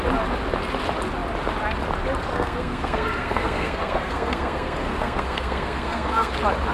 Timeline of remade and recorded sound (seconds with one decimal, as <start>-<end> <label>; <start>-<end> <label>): 0.0-2.3 recorded; 2.3-6.3 remade; 6.3-6.7 recorded